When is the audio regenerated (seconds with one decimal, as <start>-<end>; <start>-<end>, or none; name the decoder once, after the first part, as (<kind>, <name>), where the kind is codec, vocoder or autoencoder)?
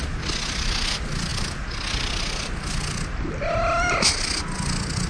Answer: none